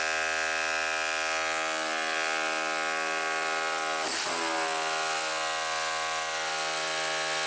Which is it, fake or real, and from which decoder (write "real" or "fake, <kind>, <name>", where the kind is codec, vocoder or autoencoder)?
real